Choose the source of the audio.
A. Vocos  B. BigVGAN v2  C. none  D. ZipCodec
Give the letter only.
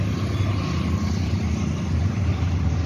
C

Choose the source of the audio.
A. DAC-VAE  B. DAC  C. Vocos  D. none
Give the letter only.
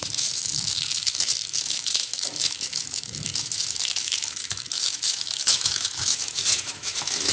A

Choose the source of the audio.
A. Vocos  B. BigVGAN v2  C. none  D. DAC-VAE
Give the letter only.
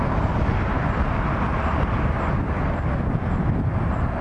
C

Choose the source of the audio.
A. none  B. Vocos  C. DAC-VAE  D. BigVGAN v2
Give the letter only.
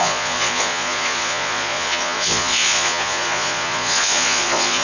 B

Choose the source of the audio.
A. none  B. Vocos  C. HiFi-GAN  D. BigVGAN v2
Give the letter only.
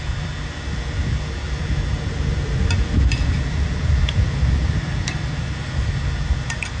D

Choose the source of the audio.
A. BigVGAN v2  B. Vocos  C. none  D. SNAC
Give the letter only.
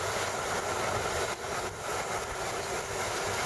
C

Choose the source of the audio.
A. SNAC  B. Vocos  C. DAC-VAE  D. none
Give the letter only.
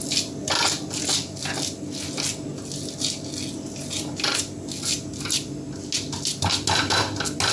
D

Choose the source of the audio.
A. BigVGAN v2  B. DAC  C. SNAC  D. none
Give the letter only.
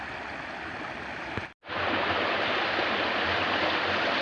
D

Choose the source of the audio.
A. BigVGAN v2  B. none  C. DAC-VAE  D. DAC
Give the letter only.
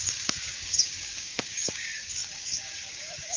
D